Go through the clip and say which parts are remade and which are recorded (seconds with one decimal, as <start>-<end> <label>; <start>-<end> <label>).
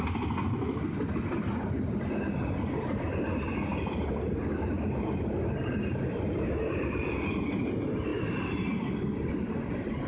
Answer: 0.0-10.1 recorded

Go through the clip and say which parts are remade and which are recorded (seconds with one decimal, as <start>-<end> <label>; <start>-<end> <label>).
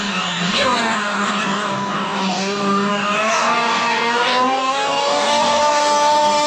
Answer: 0.0-6.5 remade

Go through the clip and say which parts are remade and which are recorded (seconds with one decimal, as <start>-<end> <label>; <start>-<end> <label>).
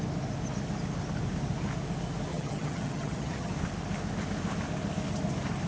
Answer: 0.0-2.3 recorded; 2.3-3.5 remade; 3.5-5.7 recorded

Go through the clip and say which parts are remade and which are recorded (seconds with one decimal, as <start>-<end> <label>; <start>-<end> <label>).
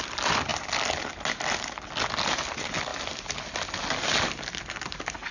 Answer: 0.0-5.3 recorded